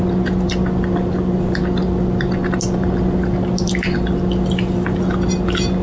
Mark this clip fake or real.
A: real